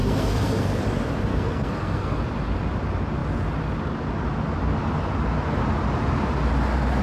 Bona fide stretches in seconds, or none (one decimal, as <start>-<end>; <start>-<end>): 0.8-1.3; 2.2-7.0